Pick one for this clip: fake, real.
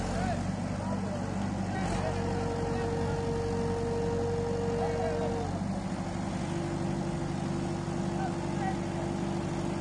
real